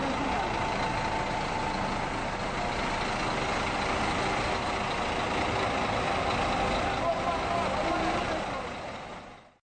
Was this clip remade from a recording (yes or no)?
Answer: no